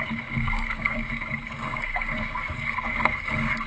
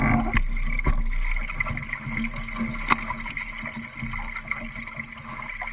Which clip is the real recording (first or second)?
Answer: second